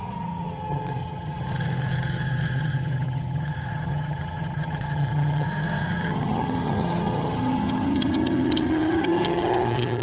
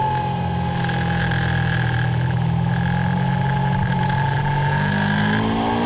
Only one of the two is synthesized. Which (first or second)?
first